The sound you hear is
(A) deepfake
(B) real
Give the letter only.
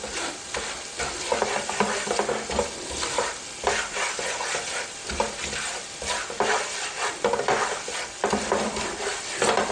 B